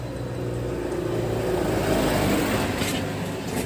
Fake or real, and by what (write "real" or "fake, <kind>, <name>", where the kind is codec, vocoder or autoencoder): real